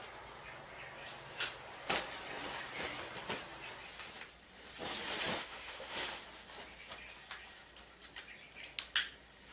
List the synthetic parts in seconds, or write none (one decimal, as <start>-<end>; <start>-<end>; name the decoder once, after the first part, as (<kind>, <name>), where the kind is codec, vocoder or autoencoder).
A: 5.3-6.2 (autoencoder, DAC-VAE)